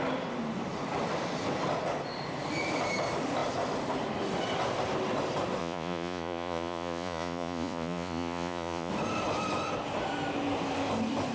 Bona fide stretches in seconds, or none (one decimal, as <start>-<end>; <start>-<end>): 0.0-5.6; 8.9-11.3